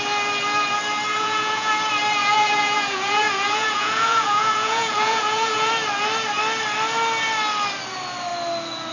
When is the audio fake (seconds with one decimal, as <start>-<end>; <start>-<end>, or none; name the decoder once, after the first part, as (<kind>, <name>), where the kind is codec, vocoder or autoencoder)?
1.1-1.7 (vocoder, Vocos); 2.2-5.7